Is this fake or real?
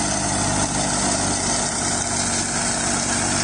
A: real